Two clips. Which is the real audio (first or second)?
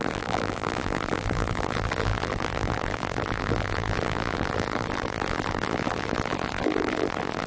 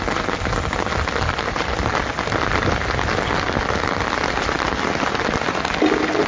second